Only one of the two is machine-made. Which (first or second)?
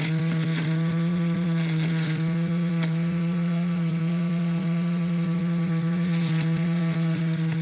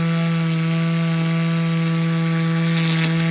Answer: first